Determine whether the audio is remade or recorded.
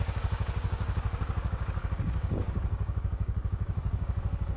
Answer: remade